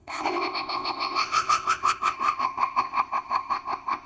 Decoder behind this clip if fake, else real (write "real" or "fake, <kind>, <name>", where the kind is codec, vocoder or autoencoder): fake, codec, ZipCodec